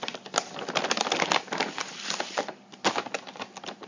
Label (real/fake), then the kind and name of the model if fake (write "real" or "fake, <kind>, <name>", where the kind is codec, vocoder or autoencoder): fake, vocoder, BigVGAN v2